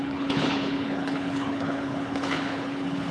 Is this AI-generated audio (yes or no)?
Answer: yes